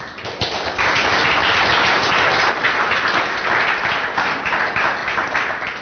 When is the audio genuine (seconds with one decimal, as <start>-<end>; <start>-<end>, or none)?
0.0-5.8